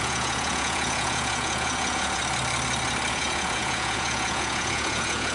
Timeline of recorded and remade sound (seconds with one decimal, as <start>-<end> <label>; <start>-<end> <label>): 0.0-2.2 remade; 2.2-3.1 recorded; 3.1-5.3 remade